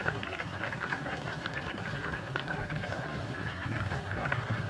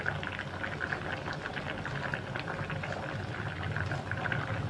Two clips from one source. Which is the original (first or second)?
second